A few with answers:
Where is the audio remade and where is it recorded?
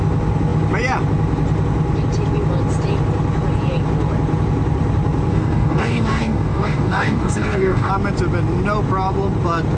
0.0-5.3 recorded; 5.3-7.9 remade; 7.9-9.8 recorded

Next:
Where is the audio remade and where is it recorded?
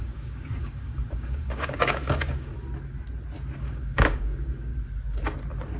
0.0-2.5 remade; 2.5-3.6 recorded; 3.6-4.7 remade; 4.7-5.8 recorded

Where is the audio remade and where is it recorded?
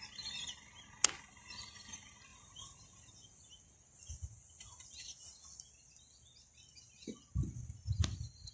0.0-8.5 recorded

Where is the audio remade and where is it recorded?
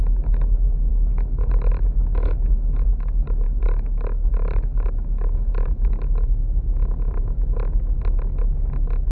0.0-6.4 remade; 6.4-9.1 recorded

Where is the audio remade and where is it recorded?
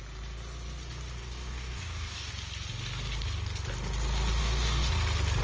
0.0-1.2 recorded; 1.2-2.3 remade; 2.3-4.4 recorded; 4.4-4.9 remade; 4.9-5.4 recorded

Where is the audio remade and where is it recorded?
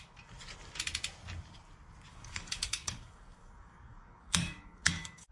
0.0-2.1 recorded; 2.1-5.3 remade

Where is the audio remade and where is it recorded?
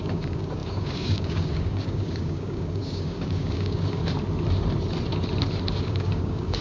0.0-4.0 remade; 4.0-5.8 recorded; 5.8-6.6 remade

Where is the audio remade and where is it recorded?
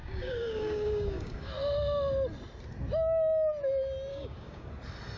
0.0-1.5 remade; 1.5-4.1 recorded; 4.1-4.7 remade; 4.7-5.2 recorded